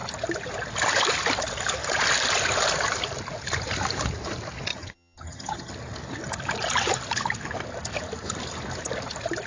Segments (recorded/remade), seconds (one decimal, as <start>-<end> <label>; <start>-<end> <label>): 0.0-4.7 recorded; 4.7-5.7 remade; 5.7-9.5 recorded